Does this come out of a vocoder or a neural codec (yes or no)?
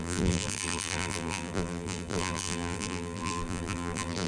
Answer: yes